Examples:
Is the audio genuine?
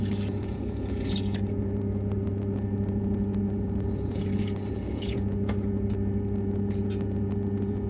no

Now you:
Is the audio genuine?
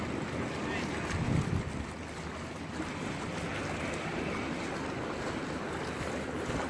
yes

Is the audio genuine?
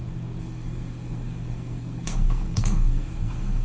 no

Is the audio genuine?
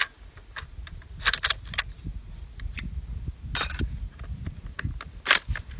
yes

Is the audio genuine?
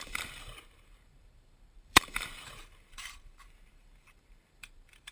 no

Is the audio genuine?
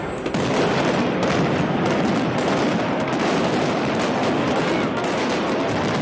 yes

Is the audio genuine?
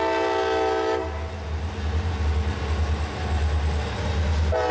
yes